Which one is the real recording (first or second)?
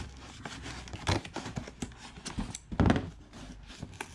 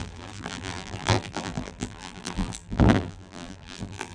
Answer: first